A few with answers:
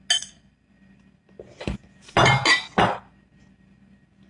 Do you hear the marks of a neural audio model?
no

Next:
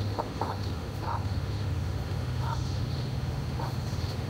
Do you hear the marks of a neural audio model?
yes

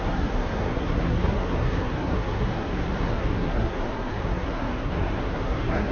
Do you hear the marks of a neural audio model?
yes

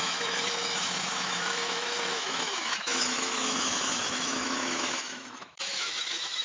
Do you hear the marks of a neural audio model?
yes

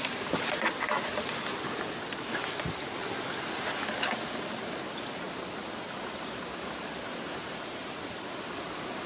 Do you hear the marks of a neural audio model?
no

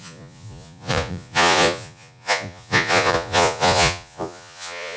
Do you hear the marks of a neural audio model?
yes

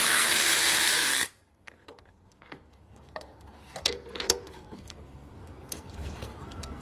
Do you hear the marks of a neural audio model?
yes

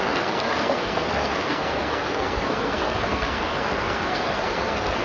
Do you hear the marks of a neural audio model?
yes